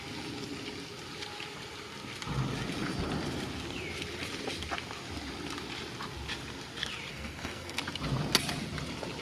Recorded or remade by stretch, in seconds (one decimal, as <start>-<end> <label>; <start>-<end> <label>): 0.0-7.1 recorded; 7.1-7.8 remade; 7.8-9.2 recorded